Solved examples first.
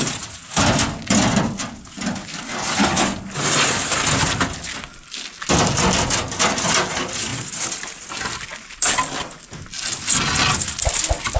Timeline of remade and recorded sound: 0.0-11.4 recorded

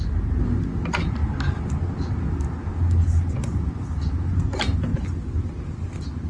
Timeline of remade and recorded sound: 0.0-6.3 recorded

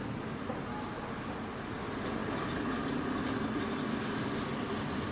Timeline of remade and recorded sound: 0.0-5.1 recorded

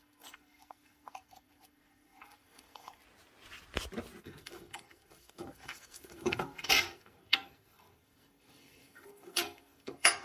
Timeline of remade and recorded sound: 0.0-3.0 remade; 3.0-4.2 recorded; 4.2-10.2 remade

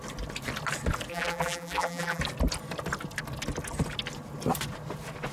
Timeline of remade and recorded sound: 0.0-1.1 recorded; 1.1-2.2 remade; 2.2-5.3 recorded